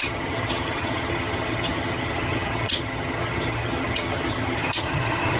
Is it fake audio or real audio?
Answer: fake